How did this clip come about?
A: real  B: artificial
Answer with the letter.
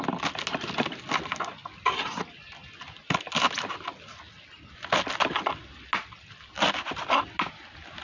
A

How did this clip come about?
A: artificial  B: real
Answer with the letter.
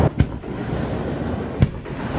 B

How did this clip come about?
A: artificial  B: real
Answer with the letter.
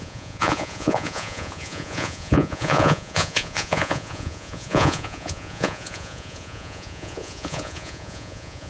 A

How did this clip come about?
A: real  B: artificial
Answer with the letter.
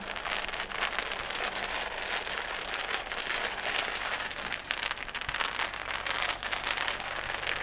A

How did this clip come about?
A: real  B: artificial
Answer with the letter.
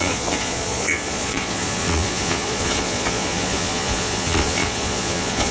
B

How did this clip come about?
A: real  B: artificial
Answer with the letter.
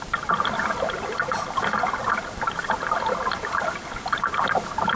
A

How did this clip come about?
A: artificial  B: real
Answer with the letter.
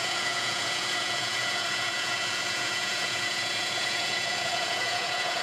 A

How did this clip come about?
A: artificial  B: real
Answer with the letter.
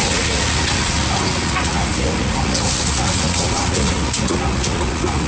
A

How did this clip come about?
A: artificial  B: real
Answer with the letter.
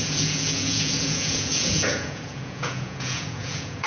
A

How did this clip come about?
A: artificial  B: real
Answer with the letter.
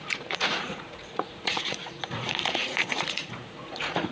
A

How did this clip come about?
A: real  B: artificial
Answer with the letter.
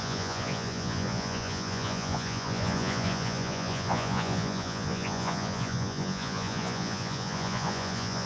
B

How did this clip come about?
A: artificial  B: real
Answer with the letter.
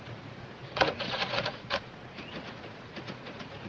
A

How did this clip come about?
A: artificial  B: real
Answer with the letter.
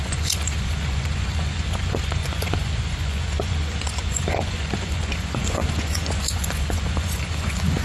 A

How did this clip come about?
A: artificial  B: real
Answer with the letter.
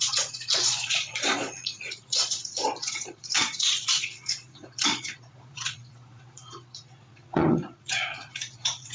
A